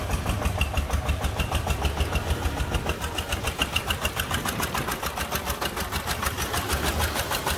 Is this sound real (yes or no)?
yes